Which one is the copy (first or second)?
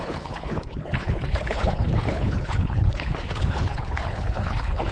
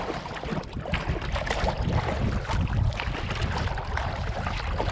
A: first